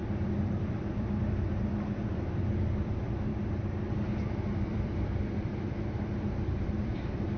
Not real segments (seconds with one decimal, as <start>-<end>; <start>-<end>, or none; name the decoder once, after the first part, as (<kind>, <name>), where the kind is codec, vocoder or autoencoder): 0.0-3.3 (vocoder, BigVGAN v2); 3.9-5.5; 6.5-7.4